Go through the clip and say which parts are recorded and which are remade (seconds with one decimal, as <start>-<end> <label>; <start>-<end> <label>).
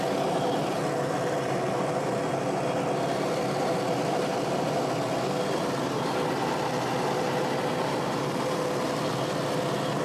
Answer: 0.0-7.4 recorded; 7.4-9.1 remade; 9.1-10.0 recorded